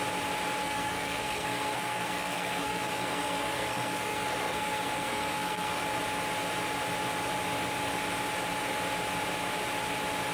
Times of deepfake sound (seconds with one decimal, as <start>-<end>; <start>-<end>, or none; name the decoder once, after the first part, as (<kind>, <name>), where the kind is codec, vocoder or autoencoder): 0.6-5.8 (codec, SNAC)